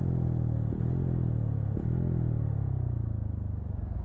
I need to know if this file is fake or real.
real